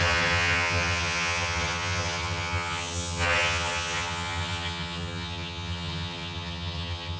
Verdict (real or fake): fake